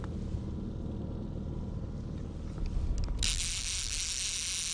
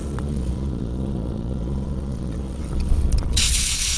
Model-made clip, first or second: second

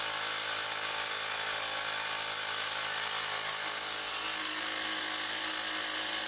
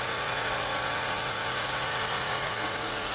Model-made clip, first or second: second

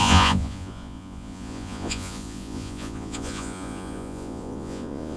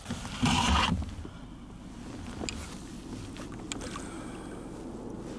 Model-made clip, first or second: first